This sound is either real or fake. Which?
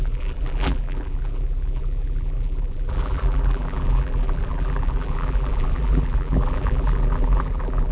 fake